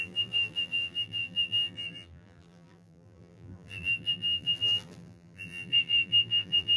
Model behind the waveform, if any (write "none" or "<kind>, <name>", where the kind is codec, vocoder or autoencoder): vocoder, BigVGAN v2